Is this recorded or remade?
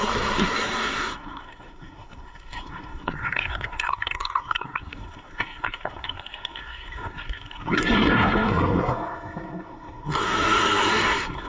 remade